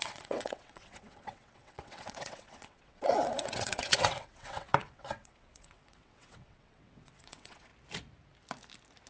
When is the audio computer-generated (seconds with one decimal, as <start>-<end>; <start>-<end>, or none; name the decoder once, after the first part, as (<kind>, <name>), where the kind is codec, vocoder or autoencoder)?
0.0-7.7 (vocoder, WaveNeXt)